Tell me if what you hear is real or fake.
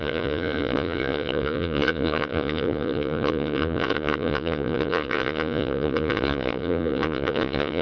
fake